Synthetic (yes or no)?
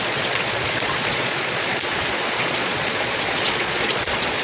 yes